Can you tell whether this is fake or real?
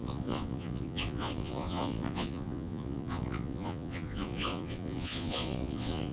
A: fake